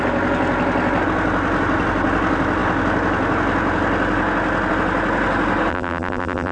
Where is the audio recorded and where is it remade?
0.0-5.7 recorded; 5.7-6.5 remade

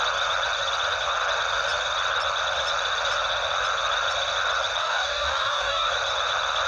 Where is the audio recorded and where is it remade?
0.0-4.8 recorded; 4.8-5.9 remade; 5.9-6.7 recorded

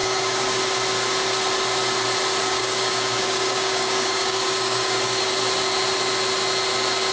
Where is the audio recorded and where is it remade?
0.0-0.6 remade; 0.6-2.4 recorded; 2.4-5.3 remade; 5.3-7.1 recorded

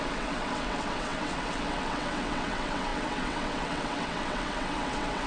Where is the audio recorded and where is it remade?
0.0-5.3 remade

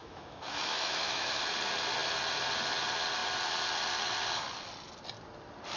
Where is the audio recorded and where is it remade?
0.0-1.4 remade; 1.4-5.8 recorded

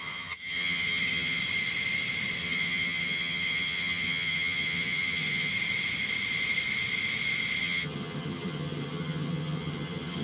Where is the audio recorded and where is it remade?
0.0-1.4 remade; 1.4-2.4 recorded; 2.4-5.5 remade; 5.5-7.6 recorded; 7.6-10.2 remade